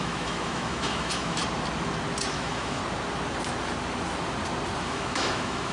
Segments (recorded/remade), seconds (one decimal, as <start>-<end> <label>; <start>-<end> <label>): 0.0-1.4 remade; 1.4-2.3 recorded; 2.3-2.8 remade; 2.8-4.8 recorded; 4.8-5.7 remade